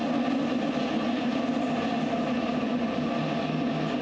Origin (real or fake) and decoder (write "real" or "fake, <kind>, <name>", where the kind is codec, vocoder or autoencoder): real